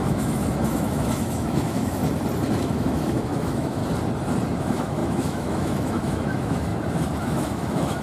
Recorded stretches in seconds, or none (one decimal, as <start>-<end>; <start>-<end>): 2.0-2.6; 3.8-4.6; 6.7-7.2